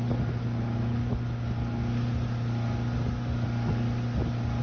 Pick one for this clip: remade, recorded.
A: recorded